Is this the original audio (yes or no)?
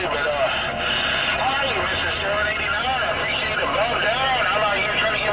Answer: yes